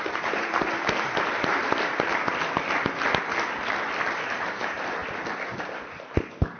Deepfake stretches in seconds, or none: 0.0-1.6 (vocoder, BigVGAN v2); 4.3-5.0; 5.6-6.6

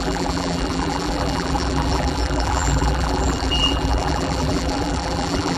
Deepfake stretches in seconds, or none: 0.0-5.6 (vocoder, BigVGAN v2)

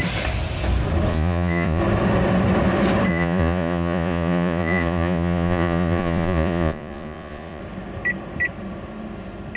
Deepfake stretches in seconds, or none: 1.1-1.8 (vocoder, Vocos); 3.1-7.6

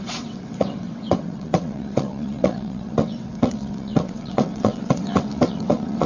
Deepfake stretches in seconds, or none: 0.0-6.1 (vocoder, WaveNeXt)

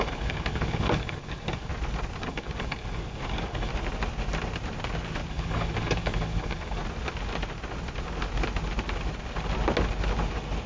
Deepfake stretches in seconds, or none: 0.0-1.7 (codec, DAC); 2.2-3.7; 5.3-6.8

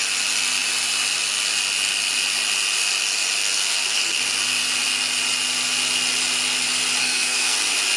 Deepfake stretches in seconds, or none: 3.4-4.2 (codec, SNAC); 7.0-7.6

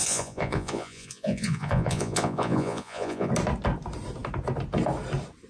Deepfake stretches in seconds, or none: 0.0-3.3 (vocoder, Vocos)